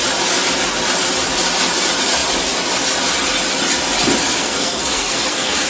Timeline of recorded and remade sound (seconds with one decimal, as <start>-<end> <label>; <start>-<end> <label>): 0.0-4.4 recorded; 4.4-5.7 remade